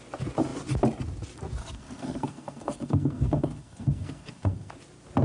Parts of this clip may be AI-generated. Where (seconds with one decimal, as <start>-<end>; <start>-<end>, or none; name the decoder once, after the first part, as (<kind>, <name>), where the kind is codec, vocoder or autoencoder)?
1.6-4.7 (codec, SNAC)